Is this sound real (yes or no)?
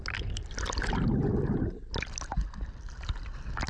yes